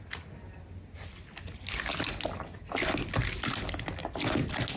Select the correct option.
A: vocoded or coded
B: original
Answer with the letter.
B